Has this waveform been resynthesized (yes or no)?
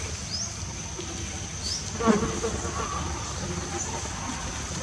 yes